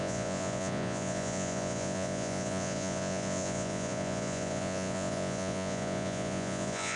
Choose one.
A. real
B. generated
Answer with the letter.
B